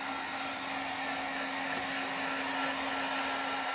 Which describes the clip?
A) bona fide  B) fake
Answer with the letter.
A